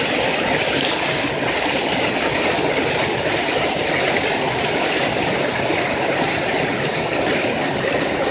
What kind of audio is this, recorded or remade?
recorded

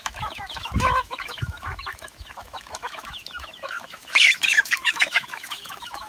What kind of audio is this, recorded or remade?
remade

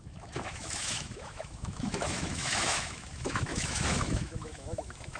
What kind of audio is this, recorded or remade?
remade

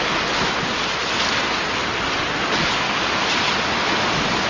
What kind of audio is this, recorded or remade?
recorded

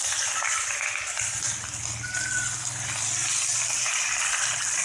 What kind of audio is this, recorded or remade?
recorded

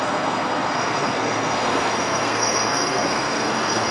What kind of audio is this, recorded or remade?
remade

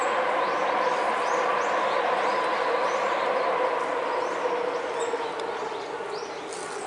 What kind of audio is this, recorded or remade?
recorded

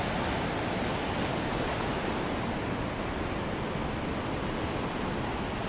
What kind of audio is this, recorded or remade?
recorded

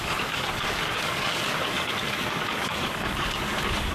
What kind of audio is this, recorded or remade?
remade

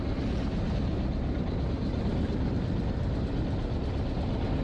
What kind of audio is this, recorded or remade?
recorded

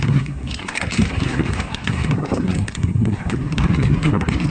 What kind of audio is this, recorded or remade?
remade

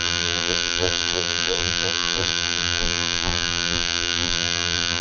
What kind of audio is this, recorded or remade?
remade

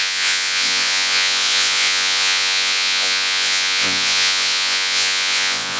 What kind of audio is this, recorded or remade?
remade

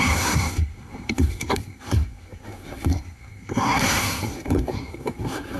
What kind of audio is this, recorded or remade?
remade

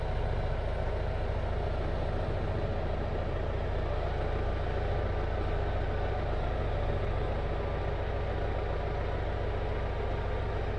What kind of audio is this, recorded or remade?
recorded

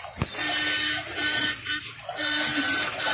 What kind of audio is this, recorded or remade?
recorded